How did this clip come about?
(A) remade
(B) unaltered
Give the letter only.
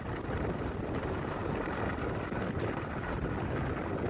B